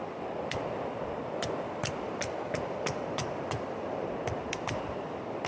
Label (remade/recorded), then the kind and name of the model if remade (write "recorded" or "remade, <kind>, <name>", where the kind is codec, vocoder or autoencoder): remade, vocoder, BigVGAN v2